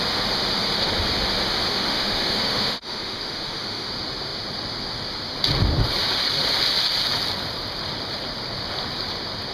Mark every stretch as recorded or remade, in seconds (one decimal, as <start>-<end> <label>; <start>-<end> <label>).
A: 0.0-1.7 recorded; 1.7-3.9 remade; 3.9-9.5 recorded